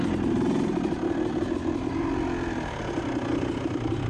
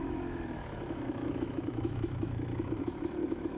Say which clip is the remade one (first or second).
second